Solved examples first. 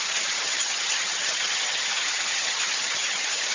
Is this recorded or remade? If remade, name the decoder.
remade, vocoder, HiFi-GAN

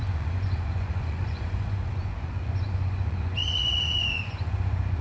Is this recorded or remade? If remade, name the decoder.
remade, vocoder, Vocos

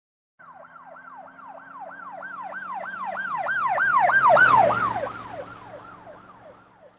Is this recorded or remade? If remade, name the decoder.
recorded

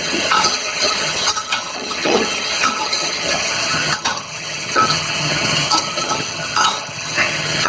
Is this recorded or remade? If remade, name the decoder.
remade, vocoder, HiFi-GAN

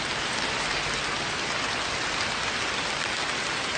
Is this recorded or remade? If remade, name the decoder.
recorded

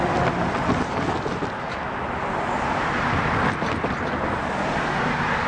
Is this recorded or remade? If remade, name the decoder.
recorded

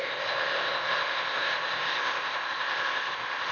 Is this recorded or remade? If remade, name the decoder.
remade, codec, ZipCodec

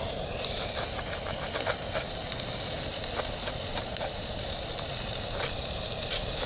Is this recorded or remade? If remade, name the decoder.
remade, vocoder, BigVGAN v2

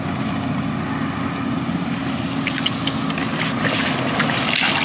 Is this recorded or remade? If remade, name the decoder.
recorded